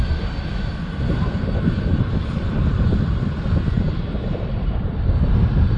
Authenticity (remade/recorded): remade